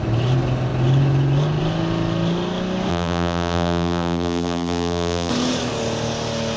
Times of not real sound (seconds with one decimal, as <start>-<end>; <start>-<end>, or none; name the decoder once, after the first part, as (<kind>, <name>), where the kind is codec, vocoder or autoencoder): 2.9-5.3 (vocoder, BigVGAN v2)